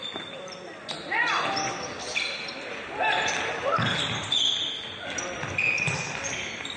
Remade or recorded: recorded